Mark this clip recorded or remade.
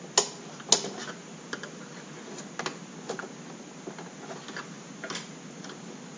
recorded